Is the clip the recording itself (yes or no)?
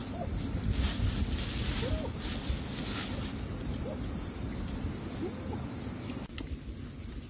yes